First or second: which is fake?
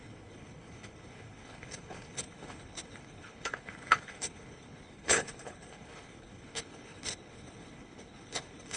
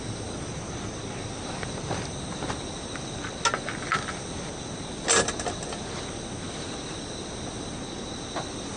first